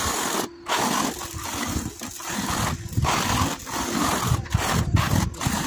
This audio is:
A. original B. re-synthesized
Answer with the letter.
A